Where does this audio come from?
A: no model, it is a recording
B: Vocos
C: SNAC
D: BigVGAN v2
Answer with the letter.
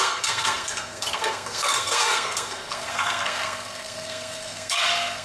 C